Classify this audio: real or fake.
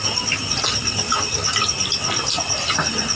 real